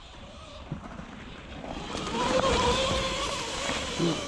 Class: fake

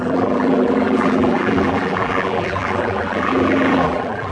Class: fake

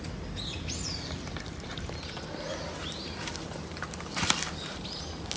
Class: real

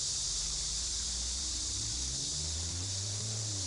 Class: fake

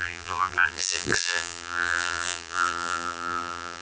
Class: fake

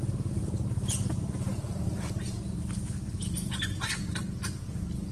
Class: real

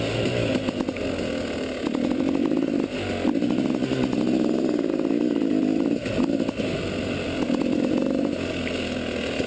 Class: real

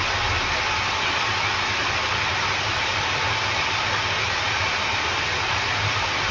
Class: real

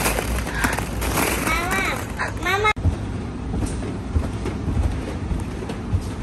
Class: fake